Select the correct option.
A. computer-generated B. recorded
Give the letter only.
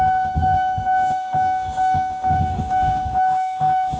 A